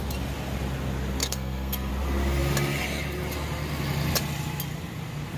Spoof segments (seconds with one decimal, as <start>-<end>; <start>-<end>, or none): 1.2-1.9